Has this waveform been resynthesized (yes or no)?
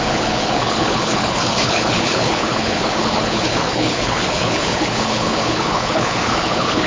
yes